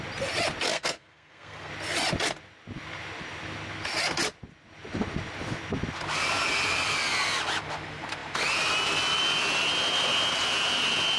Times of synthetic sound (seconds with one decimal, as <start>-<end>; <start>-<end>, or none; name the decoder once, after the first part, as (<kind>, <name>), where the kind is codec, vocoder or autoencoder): 0.7-1.7 (codec, SNAC)